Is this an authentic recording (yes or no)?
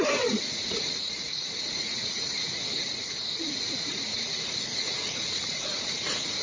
no